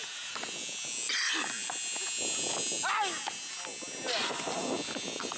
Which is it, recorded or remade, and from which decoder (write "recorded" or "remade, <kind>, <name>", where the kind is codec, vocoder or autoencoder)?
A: recorded